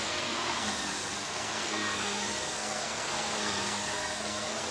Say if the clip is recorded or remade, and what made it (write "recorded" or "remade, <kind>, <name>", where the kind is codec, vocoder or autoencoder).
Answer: remade, codec, SNAC